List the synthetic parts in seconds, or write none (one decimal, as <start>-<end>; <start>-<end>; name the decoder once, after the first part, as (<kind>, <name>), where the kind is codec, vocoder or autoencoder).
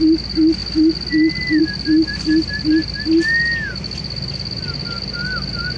none